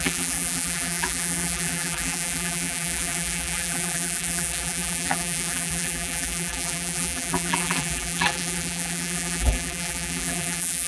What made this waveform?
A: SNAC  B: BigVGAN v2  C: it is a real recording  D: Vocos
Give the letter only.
B